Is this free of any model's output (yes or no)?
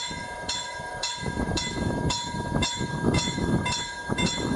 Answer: no